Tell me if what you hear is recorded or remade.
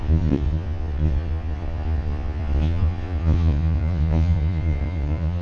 remade